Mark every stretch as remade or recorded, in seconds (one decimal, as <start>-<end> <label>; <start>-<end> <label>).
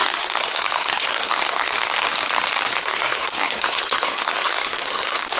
0.0-1.7 remade; 1.7-2.8 recorded; 2.8-5.4 remade